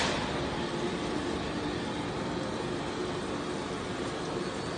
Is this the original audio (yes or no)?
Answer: no